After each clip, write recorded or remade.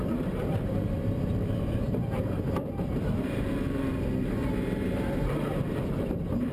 remade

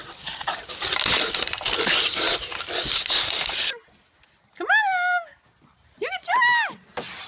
recorded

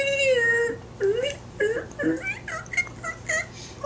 recorded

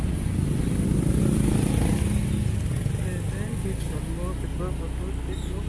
recorded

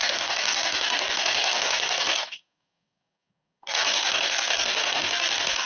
remade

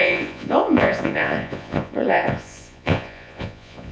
remade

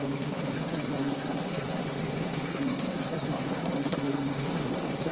remade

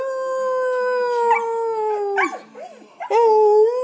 recorded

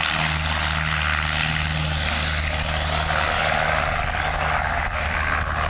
recorded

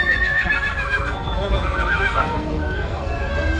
remade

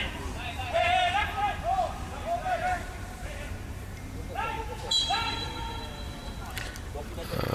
remade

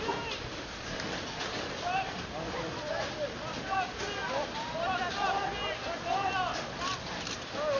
recorded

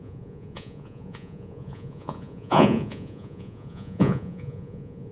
remade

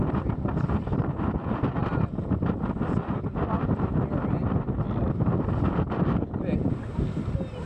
recorded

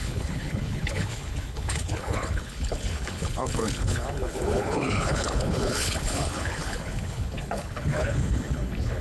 remade